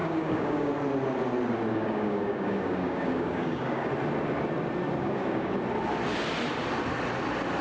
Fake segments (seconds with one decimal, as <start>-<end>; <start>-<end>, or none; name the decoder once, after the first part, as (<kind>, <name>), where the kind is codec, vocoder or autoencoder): 0.0-0.7 (codec, DAC); 1.7-3.9; 5.0-5.5